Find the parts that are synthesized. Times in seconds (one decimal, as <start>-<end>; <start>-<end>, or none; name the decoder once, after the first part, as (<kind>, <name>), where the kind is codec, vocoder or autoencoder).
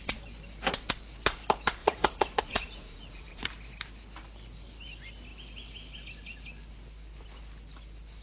1.8-3.4 (vocoder, Vocos)